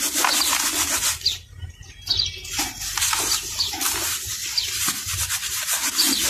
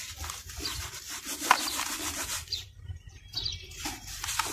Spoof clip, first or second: second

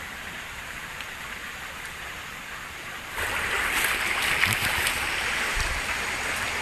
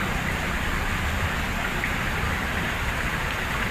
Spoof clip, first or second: first